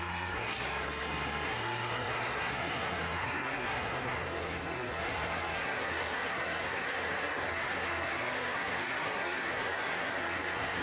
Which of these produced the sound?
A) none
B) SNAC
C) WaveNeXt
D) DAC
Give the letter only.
B